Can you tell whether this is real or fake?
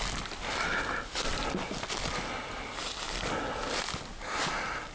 real